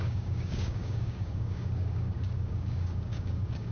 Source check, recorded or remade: remade